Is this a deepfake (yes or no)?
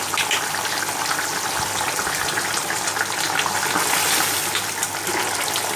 no